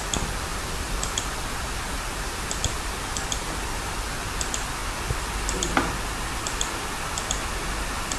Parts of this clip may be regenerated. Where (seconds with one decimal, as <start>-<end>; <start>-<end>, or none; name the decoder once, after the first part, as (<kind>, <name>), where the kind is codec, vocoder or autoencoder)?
0.5-2.9 (vocoder, BigVGAN v2)